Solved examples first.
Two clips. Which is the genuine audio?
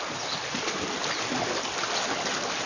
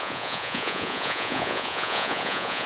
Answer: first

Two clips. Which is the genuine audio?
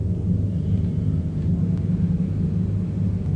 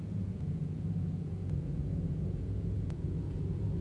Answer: first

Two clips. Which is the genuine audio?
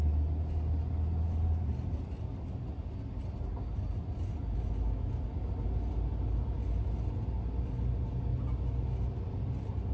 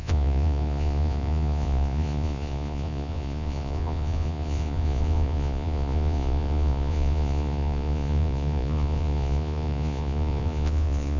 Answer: first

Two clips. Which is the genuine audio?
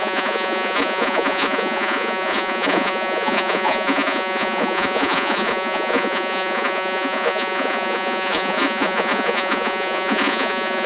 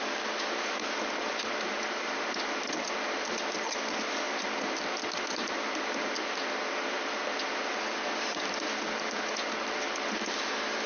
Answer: second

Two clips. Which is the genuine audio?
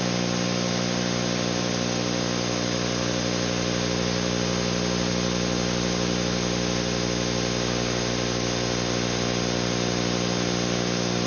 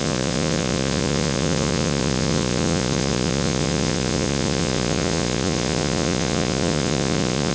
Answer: first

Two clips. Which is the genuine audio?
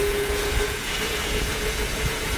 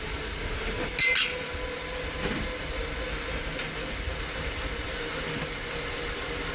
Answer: second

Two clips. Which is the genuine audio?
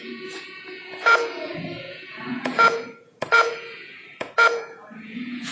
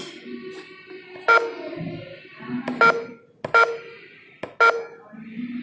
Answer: second